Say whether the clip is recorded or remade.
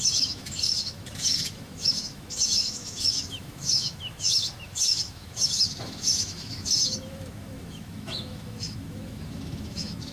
remade